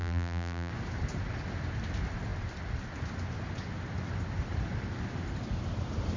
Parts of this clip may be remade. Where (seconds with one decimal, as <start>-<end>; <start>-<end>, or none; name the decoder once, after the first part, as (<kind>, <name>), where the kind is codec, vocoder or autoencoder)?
0.0-0.7 (vocoder, BigVGAN v2)